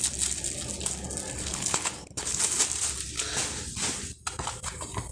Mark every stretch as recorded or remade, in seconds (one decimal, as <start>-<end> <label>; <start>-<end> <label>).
0.0-1.4 recorded; 1.4-2.4 remade; 2.4-5.1 recorded